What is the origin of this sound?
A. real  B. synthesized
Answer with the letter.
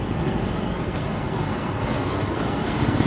B